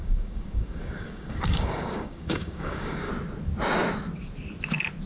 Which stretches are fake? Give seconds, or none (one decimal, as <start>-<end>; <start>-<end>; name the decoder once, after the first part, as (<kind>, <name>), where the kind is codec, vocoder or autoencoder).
0.0-3.1 (codec, DAC)